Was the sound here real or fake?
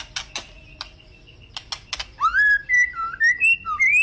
real